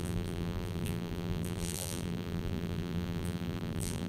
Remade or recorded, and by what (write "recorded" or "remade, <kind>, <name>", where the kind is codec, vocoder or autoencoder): remade, vocoder, BigVGAN v2